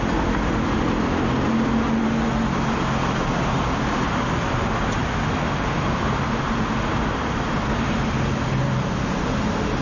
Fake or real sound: real